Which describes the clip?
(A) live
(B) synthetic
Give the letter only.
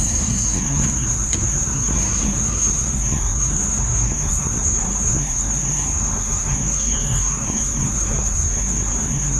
B